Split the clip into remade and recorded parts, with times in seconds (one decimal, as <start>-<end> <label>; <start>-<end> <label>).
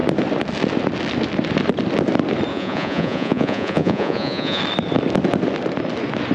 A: 0.0-2.5 recorded; 2.5-4.6 remade; 4.6-6.3 recorded